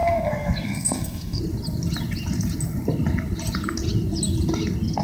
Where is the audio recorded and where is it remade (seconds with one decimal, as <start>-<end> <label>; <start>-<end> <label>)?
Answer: 0.0-1.4 remade; 1.4-5.0 recorded